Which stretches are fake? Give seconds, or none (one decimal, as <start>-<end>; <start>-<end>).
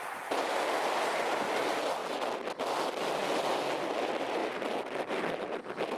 none